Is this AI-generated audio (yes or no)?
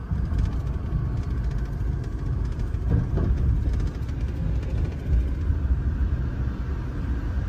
no